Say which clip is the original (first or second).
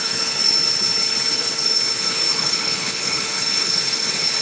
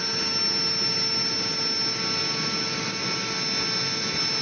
second